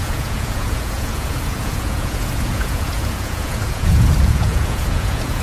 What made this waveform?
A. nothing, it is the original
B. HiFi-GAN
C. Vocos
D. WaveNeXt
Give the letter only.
C